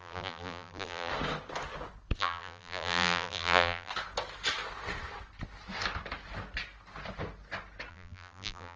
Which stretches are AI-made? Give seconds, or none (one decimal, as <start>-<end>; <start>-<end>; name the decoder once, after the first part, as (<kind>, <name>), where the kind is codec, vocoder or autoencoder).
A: 0.0-1.1 (vocoder, BigVGAN v2); 2.2-3.9; 7.9-8.8